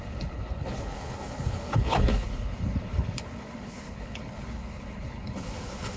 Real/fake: fake